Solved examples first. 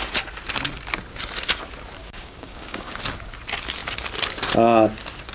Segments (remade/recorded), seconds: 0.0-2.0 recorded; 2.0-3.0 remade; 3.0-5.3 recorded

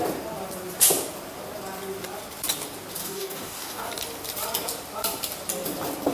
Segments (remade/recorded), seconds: 0.0-3.0 recorded; 3.0-3.9 remade; 3.9-6.1 recorded